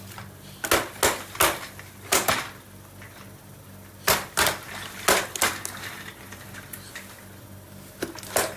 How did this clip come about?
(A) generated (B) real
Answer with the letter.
B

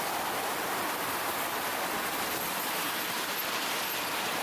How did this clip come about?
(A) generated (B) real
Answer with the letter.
A